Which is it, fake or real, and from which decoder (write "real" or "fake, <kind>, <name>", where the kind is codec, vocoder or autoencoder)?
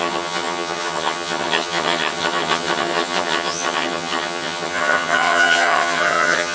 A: fake, vocoder, HiFi-GAN